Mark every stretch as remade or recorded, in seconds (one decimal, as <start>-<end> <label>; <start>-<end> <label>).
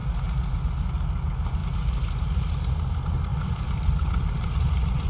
0.0-3.3 recorded; 3.3-3.9 remade; 3.9-5.1 recorded